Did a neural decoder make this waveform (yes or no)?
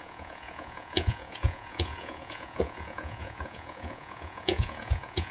yes